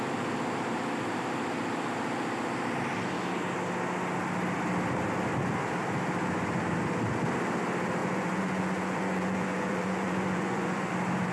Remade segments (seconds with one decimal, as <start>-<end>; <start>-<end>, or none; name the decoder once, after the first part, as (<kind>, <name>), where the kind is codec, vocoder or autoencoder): 8.0-10.9 (vocoder, Vocos)